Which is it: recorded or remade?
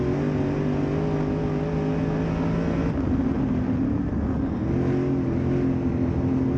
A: recorded